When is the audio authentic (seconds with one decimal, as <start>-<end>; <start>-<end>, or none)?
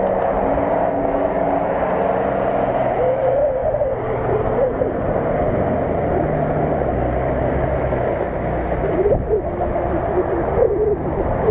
0.0-1.0; 1.5-11.5